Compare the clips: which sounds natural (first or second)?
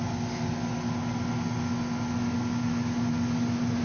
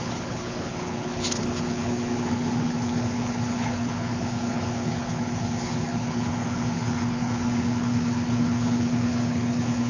first